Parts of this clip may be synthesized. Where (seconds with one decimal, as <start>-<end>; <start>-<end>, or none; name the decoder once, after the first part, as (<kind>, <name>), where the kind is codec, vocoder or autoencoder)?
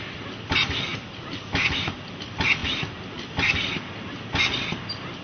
none